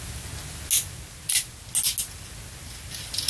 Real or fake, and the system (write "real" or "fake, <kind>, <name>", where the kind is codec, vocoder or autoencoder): real